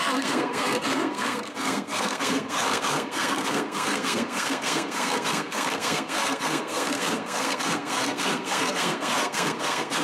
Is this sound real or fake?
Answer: fake